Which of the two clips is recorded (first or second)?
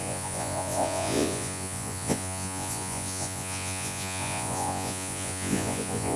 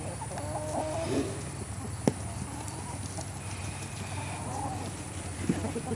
second